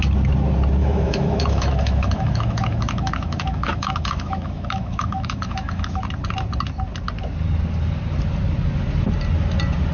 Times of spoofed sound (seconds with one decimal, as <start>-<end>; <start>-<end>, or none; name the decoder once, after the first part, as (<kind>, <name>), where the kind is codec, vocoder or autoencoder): 0.8-6.0 (autoencoder, DAC-VAE)